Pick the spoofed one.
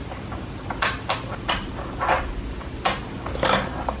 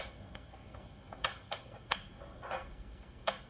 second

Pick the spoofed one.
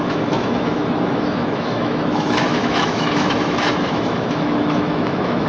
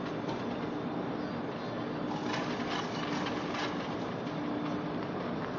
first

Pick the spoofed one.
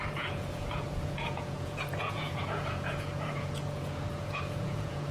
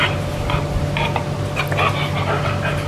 first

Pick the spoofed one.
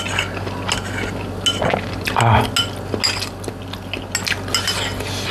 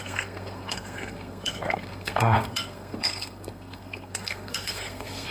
second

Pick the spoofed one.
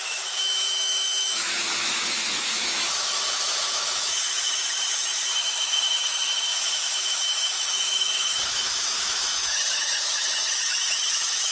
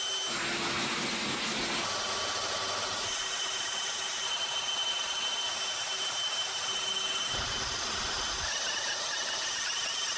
first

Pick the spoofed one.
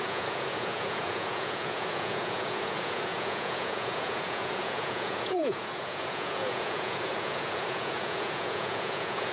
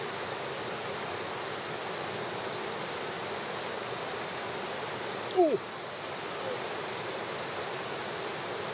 first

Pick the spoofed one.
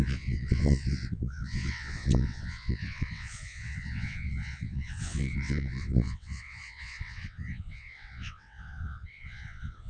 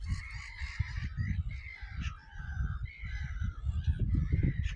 first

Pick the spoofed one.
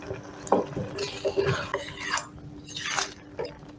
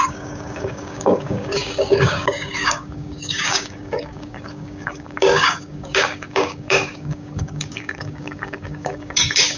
second